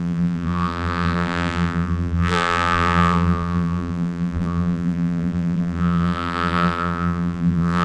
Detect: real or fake fake